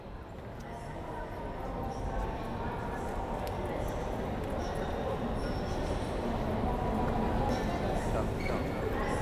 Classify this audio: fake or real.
real